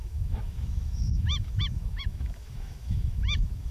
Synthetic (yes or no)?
yes